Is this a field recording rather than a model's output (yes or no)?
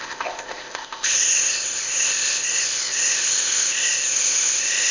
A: no